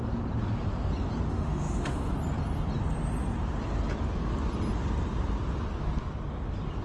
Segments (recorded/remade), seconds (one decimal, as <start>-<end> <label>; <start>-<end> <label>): 0.0-1.3 recorded; 1.3-2.1 remade; 2.1-6.8 recorded